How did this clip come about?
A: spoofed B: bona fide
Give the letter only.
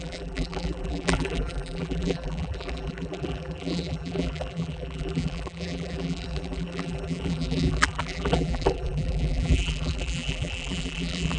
A